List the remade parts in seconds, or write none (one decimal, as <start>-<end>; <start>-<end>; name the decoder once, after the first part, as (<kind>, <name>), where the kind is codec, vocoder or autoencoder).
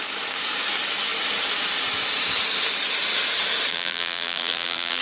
3.7-5.0 (vocoder, BigVGAN v2)